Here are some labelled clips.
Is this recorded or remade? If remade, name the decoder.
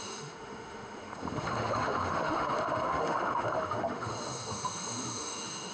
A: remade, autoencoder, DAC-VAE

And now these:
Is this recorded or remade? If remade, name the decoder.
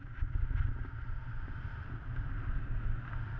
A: recorded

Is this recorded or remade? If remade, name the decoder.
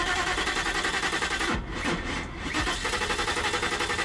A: recorded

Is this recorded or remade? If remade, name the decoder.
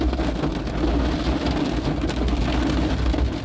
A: recorded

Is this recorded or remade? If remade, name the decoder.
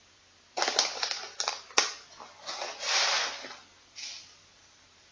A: recorded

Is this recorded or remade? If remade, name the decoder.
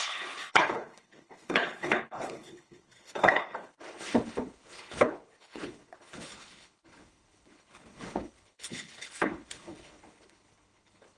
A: remade, codec, HILCodec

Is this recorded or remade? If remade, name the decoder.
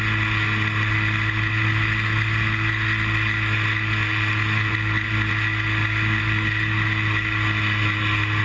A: recorded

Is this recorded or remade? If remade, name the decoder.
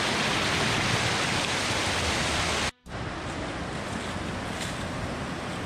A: recorded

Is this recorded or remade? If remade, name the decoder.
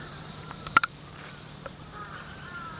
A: remade, vocoder, BigVGAN v2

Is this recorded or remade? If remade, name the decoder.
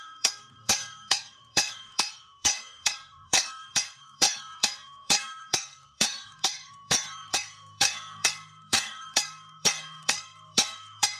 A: remade, codec, SNAC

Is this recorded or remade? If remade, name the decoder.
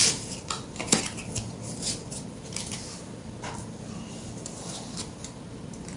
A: recorded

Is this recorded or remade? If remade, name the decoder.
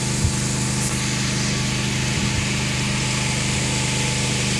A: recorded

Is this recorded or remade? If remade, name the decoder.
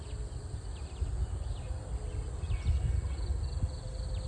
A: recorded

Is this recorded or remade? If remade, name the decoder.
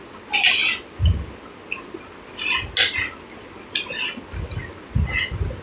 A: recorded